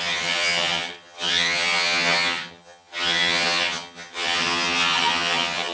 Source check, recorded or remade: remade